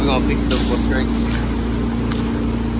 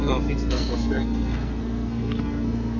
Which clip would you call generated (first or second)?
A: second